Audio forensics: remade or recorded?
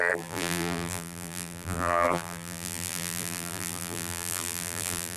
remade